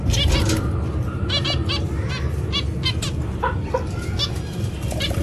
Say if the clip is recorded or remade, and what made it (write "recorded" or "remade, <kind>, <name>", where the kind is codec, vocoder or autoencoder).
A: recorded